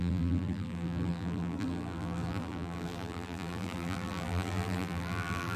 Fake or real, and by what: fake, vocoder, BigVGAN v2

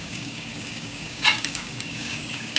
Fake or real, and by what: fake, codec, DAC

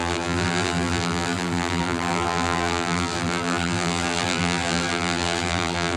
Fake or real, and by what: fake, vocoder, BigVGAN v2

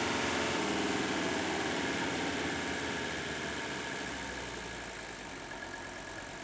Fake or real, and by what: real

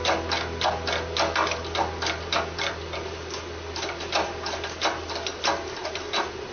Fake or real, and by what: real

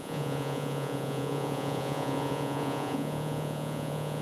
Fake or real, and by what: fake, vocoder, Vocos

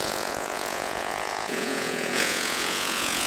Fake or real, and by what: fake, vocoder, Vocos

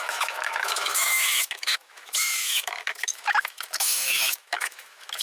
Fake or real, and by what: fake, autoencoder, DAC-VAE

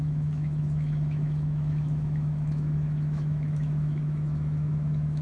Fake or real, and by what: fake, autoencoder, DAC-VAE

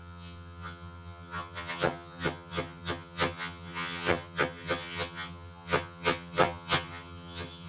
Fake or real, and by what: fake, vocoder, HiFi-GAN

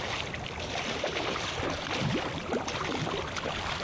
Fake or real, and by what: real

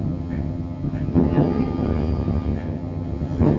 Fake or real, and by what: fake, vocoder, HiFi-GAN